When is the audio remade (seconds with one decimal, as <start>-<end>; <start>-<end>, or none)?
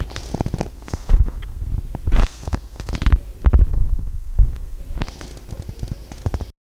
0.7-1.7; 2.2-2.9; 3.7-4.8